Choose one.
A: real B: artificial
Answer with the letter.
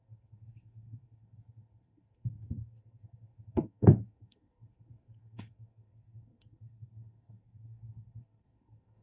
B